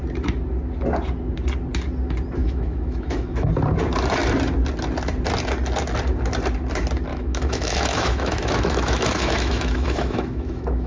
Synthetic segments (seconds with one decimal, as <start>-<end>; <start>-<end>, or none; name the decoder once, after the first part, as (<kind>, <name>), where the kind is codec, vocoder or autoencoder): 2.4-3.5 (autoencoder, DAC-VAE); 7.1-10.9